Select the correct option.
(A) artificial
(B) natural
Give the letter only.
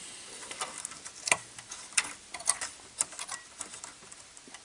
B